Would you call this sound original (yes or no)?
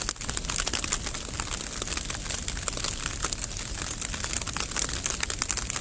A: yes